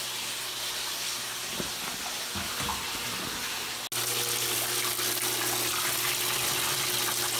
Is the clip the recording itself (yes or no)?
yes